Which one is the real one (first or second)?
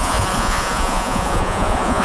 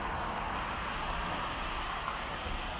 second